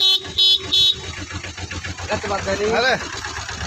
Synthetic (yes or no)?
no